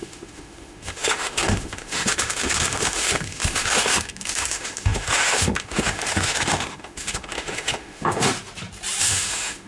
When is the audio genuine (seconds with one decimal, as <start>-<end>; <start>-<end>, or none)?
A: 8.3-9.0